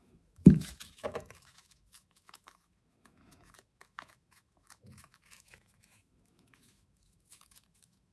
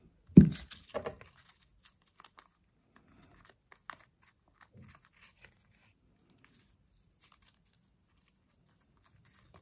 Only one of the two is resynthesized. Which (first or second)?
first